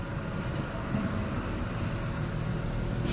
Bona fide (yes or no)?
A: yes